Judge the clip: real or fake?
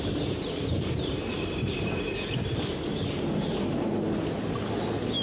real